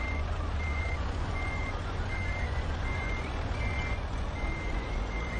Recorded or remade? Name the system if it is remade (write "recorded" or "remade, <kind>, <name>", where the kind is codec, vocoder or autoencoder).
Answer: remade, vocoder, Vocos